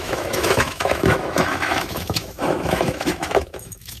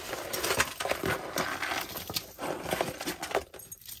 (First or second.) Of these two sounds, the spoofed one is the first